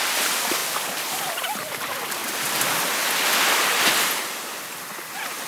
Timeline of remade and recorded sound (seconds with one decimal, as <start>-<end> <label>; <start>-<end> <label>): 0.0-5.5 recorded